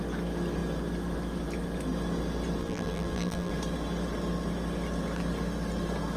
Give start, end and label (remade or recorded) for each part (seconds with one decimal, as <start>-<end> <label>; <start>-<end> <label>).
0.0-2.6 recorded; 2.6-3.5 remade; 3.5-6.2 recorded